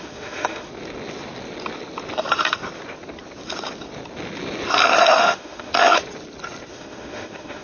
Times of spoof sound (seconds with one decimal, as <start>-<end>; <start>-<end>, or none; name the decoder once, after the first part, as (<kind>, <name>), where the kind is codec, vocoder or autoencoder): 0.0-0.7 (autoencoder, DAC-VAE); 5.2-5.7; 6.7-7.6